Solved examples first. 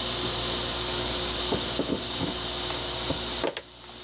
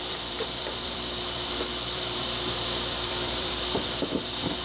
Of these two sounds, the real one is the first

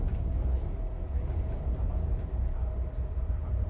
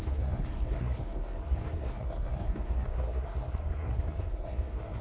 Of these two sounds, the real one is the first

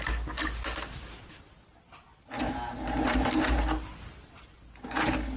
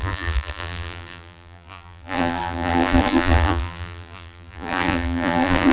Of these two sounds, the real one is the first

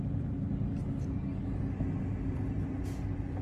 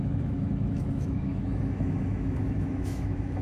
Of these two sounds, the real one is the first